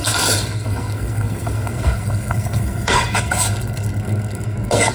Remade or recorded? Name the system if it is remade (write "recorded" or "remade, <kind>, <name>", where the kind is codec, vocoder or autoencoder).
remade, codec, SNAC